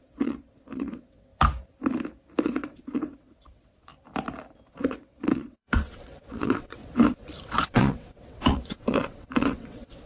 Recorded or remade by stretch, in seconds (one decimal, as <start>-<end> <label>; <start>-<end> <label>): 0.0-1.3 remade; 1.3-2.4 recorded; 2.4-3.9 remade; 3.9-4.7 recorded; 4.7-6.8 remade; 6.8-7.4 recorded; 7.4-10.1 remade